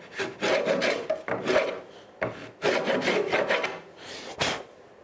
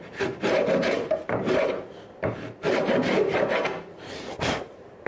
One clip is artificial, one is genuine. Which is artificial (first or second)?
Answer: second